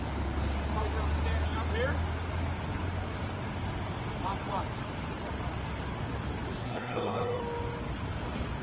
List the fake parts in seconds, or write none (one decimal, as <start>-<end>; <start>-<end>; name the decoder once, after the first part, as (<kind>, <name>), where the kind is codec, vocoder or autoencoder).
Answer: 6.6-7.4 (codec, SNAC)